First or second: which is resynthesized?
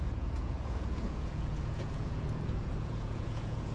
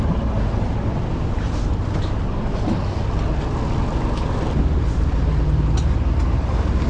first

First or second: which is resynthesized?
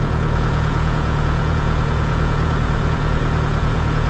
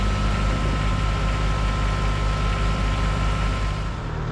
first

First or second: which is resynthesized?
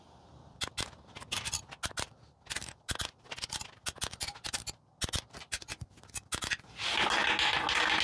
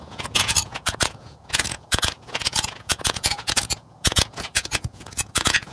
second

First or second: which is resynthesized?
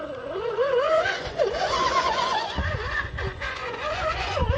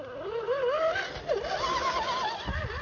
first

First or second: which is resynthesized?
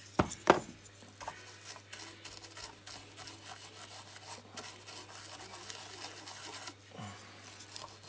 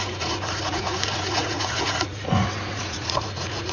second